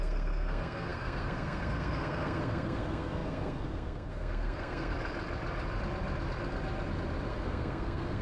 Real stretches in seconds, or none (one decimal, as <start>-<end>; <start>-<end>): 4.9-7.3